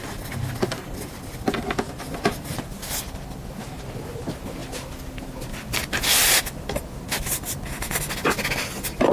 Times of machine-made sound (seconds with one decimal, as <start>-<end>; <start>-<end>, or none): none